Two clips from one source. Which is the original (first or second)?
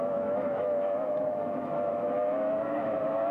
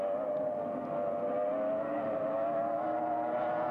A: second